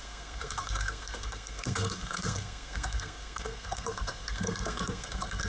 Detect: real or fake fake